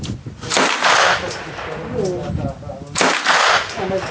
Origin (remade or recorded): recorded